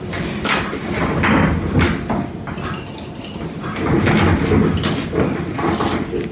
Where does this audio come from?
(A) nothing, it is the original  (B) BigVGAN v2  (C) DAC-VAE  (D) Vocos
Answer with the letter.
A